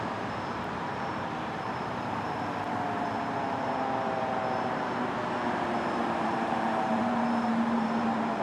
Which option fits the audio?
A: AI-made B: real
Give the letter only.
A